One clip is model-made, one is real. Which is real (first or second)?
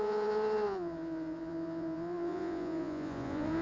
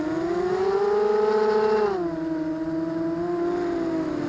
second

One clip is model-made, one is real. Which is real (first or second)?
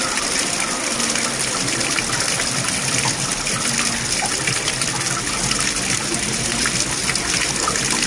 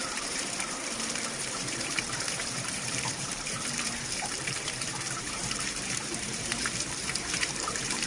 first